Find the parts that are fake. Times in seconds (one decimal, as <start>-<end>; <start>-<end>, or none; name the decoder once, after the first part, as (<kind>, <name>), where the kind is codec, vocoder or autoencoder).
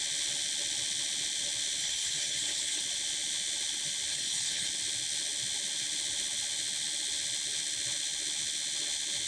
1.8-2.8 (codec, HILCodec); 4.1-4.7